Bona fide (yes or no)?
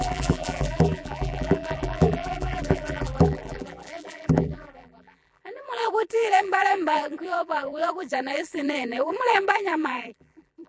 no